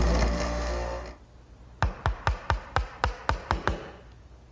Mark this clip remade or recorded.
recorded